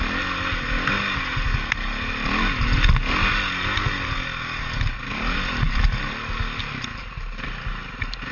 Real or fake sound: real